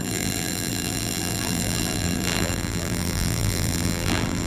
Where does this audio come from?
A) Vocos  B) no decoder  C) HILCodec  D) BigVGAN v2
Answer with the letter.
D